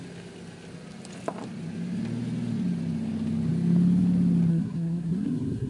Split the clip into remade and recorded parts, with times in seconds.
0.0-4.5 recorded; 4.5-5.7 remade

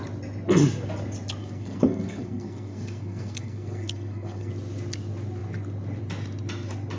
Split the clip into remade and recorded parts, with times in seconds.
0.0-1.4 recorded; 1.4-4.5 remade; 4.5-7.0 recorded

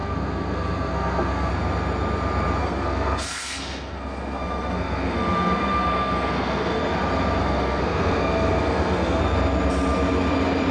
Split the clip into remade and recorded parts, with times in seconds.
0.0-1.5 remade; 1.5-2.6 recorded; 2.6-6.8 remade; 6.8-7.4 recorded; 7.4-9.2 remade; 9.2-10.7 recorded

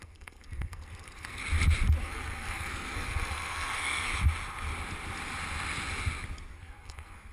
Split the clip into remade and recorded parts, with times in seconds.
0.0-1.4 remade; 1.4-2.0 recorded; 2.0-4.1 remade; 4.1-6.5 recorded; 6.5-7.3 remade

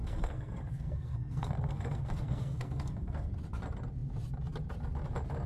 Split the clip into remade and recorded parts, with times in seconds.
0.0-3.3 remade; 3.3-5.5 recorded

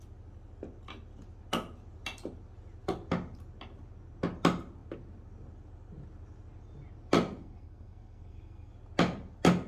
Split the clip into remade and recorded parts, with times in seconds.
0.0-7.4 recorded; 7.4-8.7 remade; 8.7-9.7 recorded